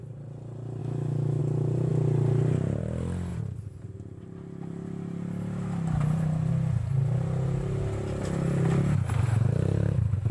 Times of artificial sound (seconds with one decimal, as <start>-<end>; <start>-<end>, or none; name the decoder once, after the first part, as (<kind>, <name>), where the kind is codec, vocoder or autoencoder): 0.8-1.4 (autoencoder, DAC-VAE)